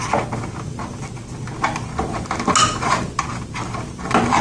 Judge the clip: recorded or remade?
recorded